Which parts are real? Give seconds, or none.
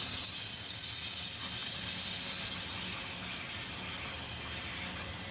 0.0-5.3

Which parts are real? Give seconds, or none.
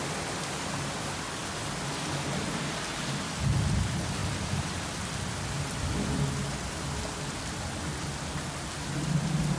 0.0-9.6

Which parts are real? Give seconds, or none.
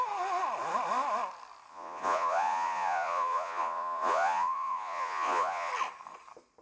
0.0-1.7; 5.7-6.6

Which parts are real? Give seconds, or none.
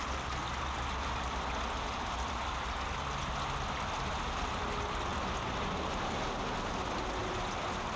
0.0-8.0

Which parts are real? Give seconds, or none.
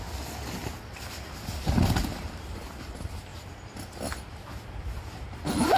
0.0-5.8